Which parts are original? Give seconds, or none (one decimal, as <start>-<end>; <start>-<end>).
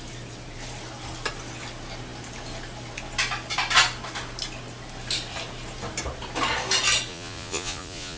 0.0-7.1